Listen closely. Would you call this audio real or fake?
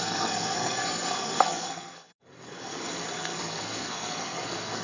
fake